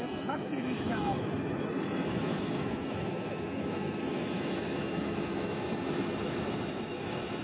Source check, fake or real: fake